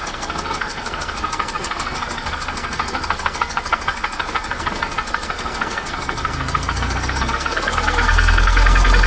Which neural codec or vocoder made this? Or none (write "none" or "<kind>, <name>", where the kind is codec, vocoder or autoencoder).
codec, SNAC